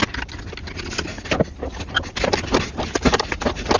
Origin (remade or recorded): recorded